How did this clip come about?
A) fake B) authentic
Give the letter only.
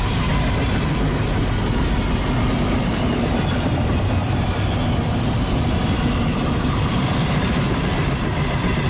B